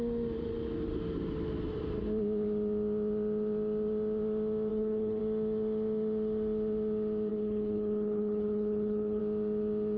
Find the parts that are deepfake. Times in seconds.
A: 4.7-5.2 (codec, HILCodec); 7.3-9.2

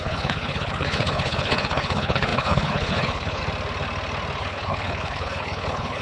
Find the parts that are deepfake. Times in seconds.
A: 0.0-3.4 (codec, HILCodec); 4.4-6.0